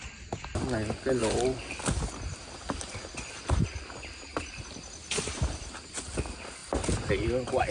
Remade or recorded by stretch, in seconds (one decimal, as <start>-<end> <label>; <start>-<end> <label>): 0.0-7.7 recorded